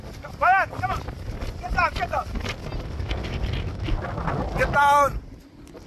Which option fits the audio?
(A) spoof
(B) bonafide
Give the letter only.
B